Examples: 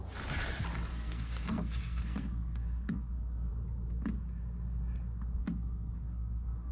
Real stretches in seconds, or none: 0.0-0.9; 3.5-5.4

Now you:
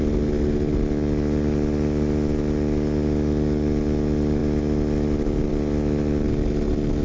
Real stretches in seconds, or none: 0.0-7.0

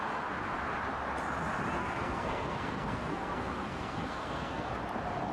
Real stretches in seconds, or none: 0.0-1.8; 4.7-5.3

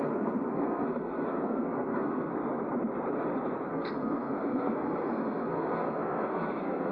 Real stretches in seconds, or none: 2.3-3.7

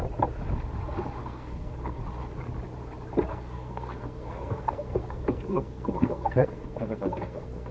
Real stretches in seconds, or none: 0.0-1.2; 2.0-3.3